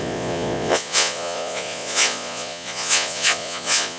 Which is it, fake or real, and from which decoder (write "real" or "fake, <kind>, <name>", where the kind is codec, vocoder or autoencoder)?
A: fake, vocoder, Vocos